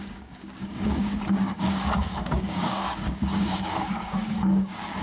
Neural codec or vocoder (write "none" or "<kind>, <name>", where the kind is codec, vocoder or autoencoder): codec, DAC